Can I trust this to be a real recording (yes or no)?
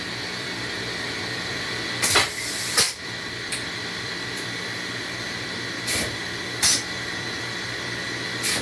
no